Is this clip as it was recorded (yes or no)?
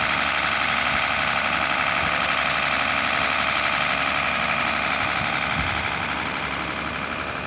yes